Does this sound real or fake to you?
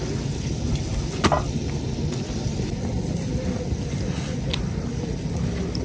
real